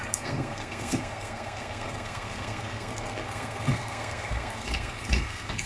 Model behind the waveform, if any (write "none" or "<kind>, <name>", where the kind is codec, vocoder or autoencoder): codec, SNAC